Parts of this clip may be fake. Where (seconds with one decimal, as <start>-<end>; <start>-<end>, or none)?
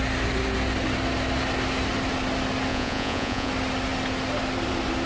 2.7-3.5